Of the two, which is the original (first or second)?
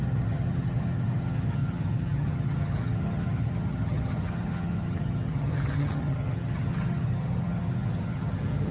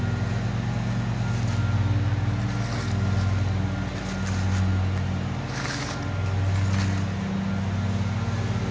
second